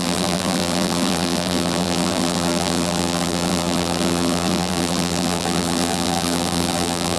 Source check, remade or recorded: remade